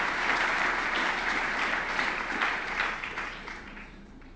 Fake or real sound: fake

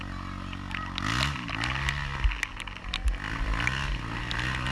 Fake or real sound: real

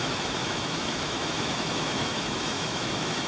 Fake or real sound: fake